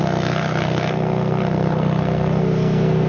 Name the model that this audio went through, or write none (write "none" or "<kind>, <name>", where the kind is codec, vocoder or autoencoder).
codec, SNAC